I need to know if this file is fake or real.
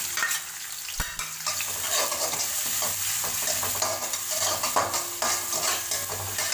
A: real